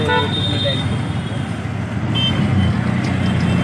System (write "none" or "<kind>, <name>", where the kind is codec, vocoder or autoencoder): none